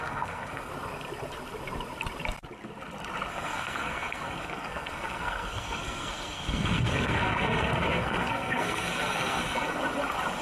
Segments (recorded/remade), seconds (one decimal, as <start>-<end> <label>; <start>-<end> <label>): 0.0-0.7 remade; 0.7-3.3 recorded; 3.3-9.8 remade; 9.8-10.4 recorded